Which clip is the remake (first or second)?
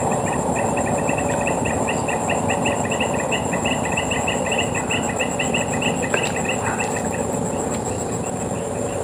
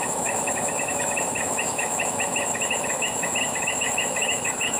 second